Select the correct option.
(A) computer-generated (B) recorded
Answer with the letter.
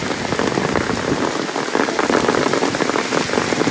B